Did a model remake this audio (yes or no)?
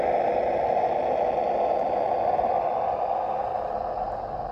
no